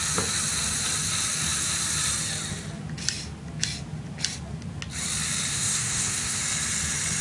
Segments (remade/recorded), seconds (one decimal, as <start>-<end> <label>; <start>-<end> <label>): 0.0-5.5 recorded; 5.5-6.4 remade; 6.4-7.2 recorded